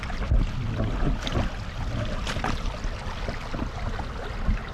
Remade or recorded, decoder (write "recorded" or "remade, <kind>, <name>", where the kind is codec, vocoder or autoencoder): recorded